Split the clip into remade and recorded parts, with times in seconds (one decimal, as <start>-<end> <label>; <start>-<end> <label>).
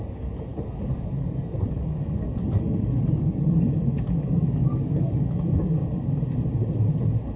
0.0-5.8 remade; 5.8-7.4 recorded